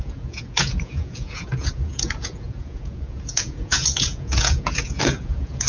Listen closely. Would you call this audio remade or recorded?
remade